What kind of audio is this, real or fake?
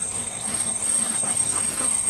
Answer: fake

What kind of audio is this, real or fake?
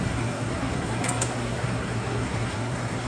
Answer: fake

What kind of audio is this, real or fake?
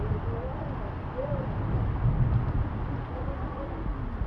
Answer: real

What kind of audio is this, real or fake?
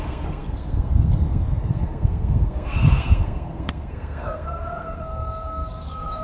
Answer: fake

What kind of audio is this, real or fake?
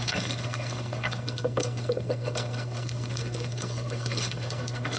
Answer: fake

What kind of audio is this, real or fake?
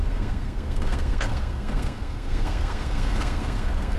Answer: fake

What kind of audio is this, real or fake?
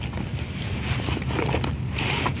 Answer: real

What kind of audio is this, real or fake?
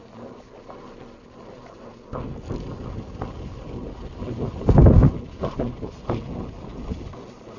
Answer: real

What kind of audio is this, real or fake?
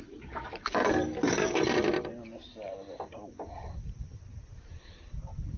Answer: real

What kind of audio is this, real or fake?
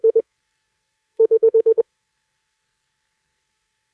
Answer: fake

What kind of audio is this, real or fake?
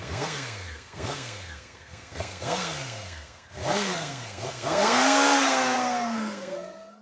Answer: fake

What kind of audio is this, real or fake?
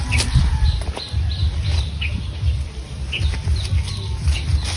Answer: real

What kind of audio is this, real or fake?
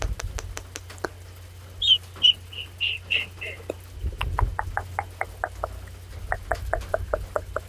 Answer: real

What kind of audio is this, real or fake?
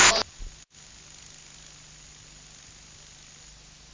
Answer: real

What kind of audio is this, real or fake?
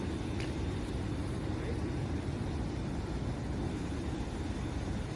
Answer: real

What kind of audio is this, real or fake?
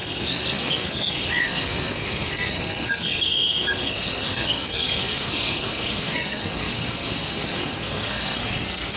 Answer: fake